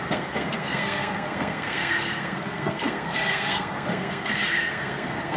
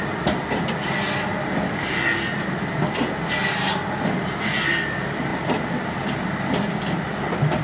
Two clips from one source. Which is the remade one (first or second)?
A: first